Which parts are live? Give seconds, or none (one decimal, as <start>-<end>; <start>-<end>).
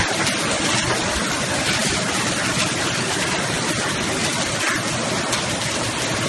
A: 0.0-6.3